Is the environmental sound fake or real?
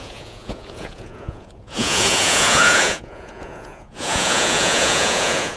fake